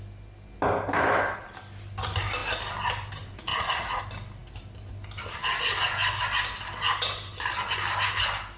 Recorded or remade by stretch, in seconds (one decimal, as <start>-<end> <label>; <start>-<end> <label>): 0.0-3.5 recorded; 3.5-4.0 remade; 4.0-8.6 recorded